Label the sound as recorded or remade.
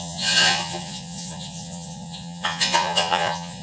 remade